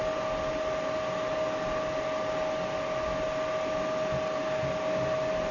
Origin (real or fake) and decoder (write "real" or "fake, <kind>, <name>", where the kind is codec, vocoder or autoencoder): real